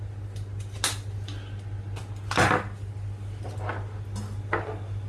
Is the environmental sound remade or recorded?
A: recorded